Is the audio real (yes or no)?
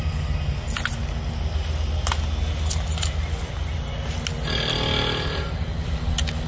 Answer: yes